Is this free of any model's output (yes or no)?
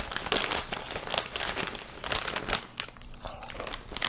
yes